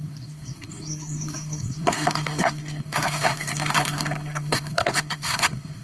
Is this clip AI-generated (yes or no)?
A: yes